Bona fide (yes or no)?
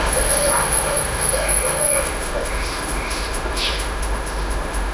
no